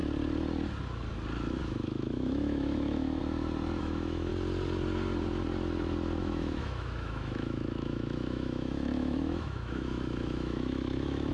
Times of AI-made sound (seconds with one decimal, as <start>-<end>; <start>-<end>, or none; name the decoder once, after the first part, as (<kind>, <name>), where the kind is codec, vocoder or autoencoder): 1.6-3.2 (autoencoder, DAC-VAE); 3.8-4.3; 6.2-11.3